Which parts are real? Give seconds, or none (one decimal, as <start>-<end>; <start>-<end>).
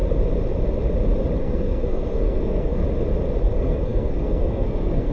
0.0-1.4; 2.8-3.4